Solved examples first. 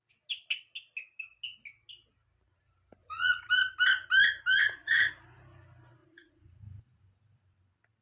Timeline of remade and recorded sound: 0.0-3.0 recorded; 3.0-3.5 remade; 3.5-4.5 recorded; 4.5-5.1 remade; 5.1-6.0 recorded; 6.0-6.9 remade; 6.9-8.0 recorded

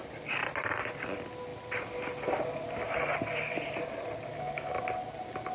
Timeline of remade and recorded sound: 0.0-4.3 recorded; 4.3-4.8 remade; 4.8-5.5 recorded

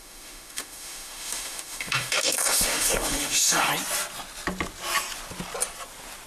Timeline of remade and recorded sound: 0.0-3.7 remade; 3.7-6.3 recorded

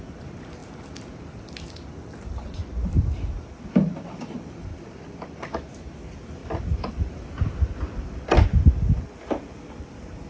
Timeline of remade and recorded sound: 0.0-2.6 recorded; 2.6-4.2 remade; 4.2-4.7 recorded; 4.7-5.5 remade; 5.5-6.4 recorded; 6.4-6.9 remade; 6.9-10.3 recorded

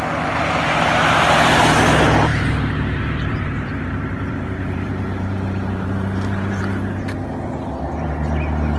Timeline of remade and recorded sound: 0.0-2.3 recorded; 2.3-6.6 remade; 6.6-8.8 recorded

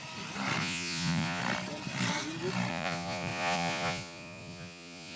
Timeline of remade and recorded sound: 0.0-0.6 recorded; 0.6-1.4 remade; 1.4-2.7 recorded; 2.7-5.2 remade

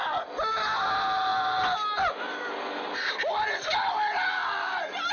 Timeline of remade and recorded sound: 0.0-5.1 recorded

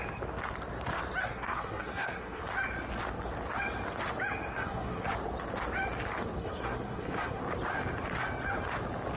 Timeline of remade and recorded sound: 0.0-1.2 recorded; 1.2-2.4 remade; 2.4-4.5 recorded; 4.5-5.1 remade; 5.1-6.4 recorded; 6.4-7.4 remade; 7.4-9.2 recorded